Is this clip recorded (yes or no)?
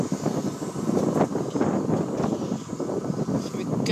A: yes